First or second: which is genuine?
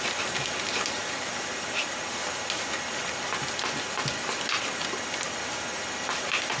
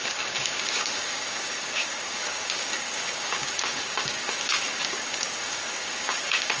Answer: first